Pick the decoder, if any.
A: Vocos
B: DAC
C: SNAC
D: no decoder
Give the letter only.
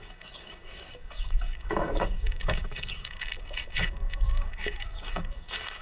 B